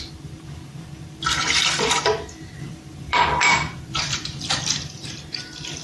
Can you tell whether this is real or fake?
fake